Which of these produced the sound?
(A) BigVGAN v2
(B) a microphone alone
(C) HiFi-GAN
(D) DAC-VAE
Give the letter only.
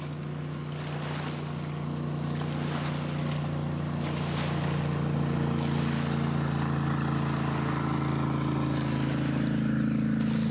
B